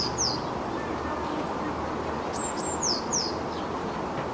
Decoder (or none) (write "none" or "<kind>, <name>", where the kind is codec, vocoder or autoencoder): vocoder, BigVGAN v2